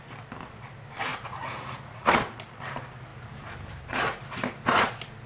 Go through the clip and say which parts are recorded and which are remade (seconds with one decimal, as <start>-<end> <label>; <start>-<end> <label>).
0.0-1.1 recorded; 1.1-2.1 remade; 2.1-5.3 recorded